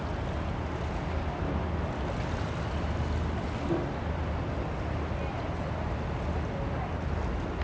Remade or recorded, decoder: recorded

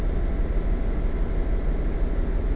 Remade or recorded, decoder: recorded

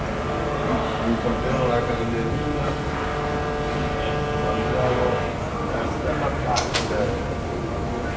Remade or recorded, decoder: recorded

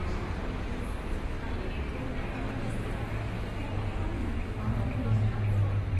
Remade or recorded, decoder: recorded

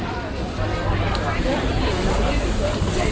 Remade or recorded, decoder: recorded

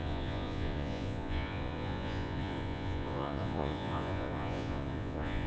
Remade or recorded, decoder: remade, vocoder, Vocos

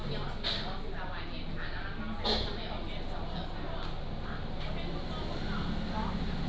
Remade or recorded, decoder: recorded